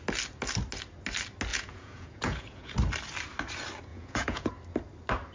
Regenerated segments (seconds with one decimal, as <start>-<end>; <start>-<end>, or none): 1.5-2.7; 3.9-4.5